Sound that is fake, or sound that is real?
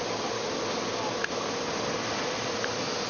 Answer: real